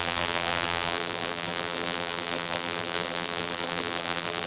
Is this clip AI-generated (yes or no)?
yes